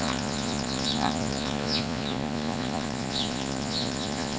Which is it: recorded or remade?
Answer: remade